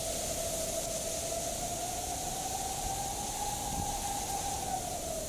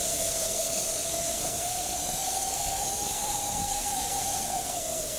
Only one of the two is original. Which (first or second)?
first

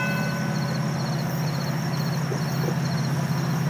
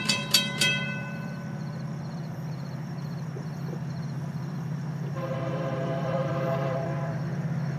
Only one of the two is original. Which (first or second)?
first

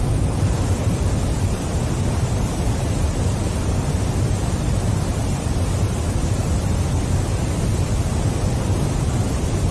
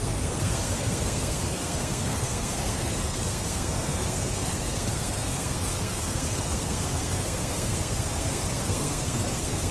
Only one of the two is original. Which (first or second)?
first